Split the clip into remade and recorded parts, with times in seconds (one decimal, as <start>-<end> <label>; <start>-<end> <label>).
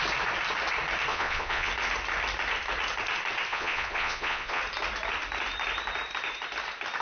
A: 0.0-1.1 recorded; 1.1-1.7 remade; 1.7-3.5 recorded; 3.5-4.6 remade; 4.6-7.0 recorded